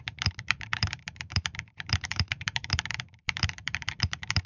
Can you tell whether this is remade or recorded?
remade